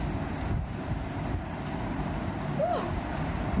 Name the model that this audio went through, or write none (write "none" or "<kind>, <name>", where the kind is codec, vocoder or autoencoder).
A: none